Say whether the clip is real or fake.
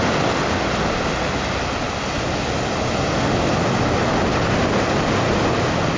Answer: real